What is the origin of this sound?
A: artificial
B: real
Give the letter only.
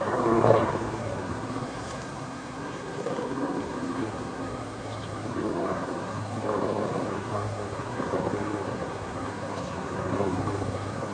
A